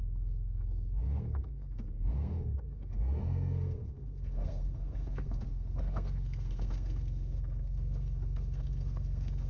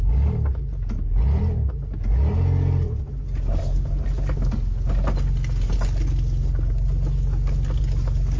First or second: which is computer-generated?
first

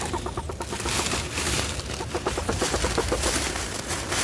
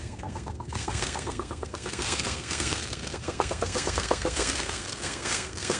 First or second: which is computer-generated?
second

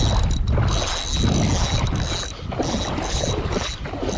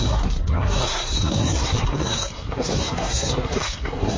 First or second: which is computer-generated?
second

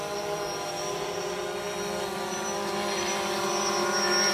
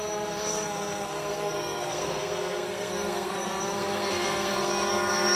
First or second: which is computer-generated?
second